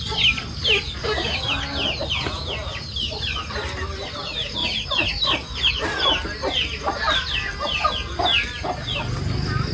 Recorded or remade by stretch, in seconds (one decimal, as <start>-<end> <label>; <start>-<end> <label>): 0.0-1.0 recorded; 1.0-1.5 remade; 1.5-9.7 recorded